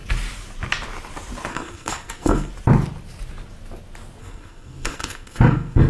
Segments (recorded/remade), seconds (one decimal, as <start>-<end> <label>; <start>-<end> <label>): 0.0-1.5 recorded; 1.5-2.5 remade; 2.5-4.2 recorded; 4.2-5.9 remade